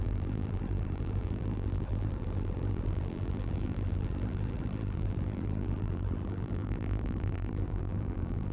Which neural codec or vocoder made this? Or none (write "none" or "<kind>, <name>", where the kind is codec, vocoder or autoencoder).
vocoder, BigVGAN v2